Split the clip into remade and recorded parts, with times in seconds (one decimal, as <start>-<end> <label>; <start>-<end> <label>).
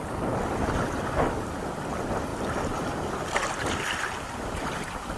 0.0-5.2 recorded